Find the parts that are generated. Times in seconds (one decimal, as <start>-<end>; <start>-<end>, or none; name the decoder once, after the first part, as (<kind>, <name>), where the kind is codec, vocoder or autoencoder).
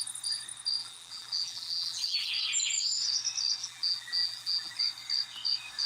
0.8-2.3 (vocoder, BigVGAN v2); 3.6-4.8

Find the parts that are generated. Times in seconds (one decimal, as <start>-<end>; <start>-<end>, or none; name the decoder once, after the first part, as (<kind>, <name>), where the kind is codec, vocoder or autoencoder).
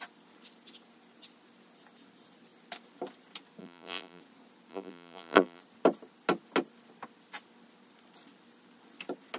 3.6-4.2 (vocoder, BigVGAN v2); 4.7-5.6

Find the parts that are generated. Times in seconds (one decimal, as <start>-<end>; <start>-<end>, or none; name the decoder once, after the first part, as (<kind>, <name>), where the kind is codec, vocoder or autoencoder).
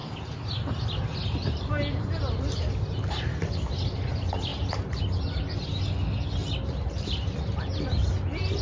4.5-5.0 (vocoder, BigVGAN v2); 6.4-7.6